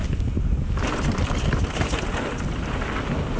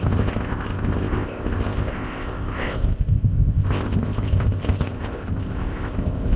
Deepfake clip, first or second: second